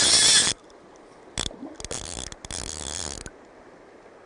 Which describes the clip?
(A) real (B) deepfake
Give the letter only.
A